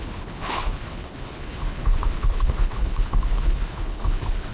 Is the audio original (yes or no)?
no